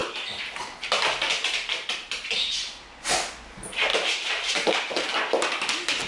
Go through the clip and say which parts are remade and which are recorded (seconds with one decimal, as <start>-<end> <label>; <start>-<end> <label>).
0.0-3.9 recorded; 3.9-5.1 remade; 5.1-6.1 recorded